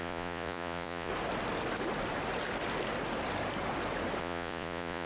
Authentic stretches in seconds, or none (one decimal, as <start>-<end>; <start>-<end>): 1.1-4.2